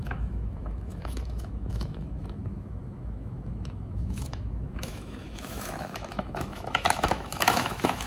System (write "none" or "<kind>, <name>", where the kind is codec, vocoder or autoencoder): autoencoder, DAC-VAE